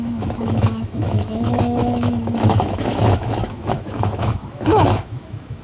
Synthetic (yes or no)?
yes